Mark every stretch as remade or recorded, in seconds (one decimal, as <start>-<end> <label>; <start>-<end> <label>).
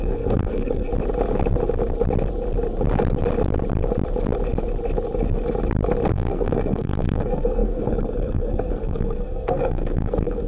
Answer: 0.0-0.9 remade; 0.9-6.1 recorded; 6.1-10.5 remade